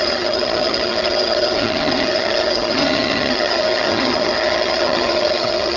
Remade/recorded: remade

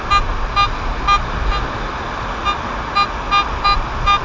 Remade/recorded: recorded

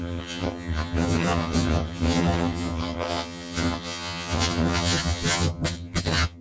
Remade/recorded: remade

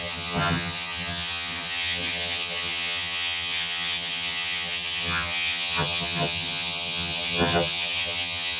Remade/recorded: remade